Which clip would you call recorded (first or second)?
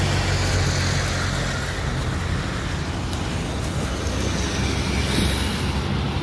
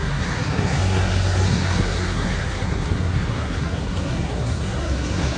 first